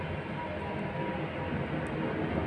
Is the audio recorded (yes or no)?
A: yes